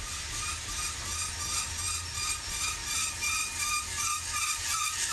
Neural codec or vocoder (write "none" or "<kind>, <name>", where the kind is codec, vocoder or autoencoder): none